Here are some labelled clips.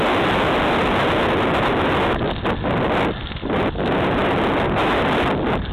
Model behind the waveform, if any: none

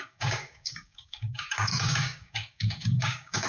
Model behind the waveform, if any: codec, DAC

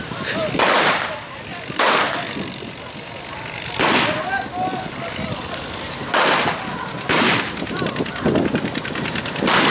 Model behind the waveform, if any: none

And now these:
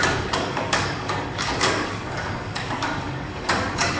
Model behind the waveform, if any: codec, DAC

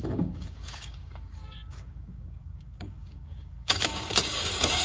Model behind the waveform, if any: codec, DAC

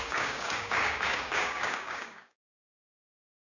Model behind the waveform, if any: codec, DAC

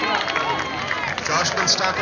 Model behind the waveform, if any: none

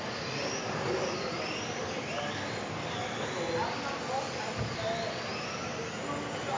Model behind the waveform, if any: none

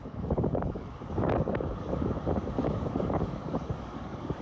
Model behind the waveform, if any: codec, DAC